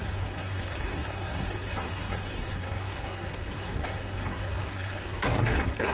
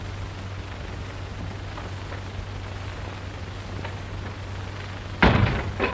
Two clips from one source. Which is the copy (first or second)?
first